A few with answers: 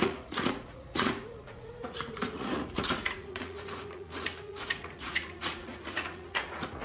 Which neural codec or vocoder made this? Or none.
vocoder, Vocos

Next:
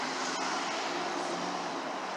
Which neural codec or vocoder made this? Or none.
vocoder, BigVGAN v2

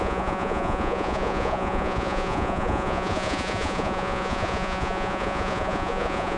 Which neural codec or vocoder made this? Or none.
vocoder, Vocos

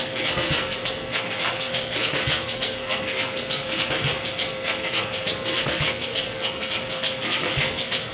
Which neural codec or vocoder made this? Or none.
codec, SNAC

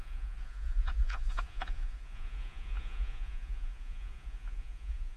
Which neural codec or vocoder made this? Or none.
vocoder, Vocos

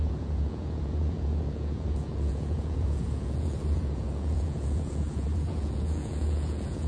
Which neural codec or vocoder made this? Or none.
vocoder, Vocos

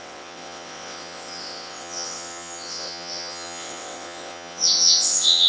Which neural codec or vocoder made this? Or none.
vocoder, WaveNeXt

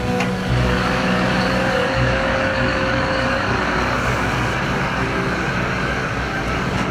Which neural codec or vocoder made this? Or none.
codec, DAC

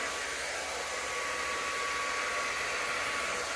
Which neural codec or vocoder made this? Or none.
none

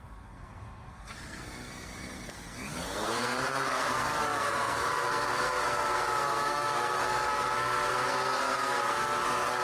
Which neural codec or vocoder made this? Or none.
codec, SNAC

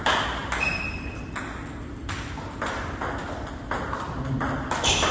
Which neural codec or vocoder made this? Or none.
none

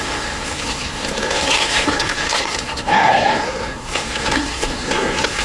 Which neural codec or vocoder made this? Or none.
codec, SNAC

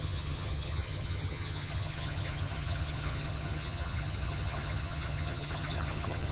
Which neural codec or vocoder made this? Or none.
vocoder, HiFi-GAN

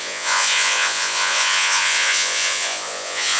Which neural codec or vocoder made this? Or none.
vocoder, Vocos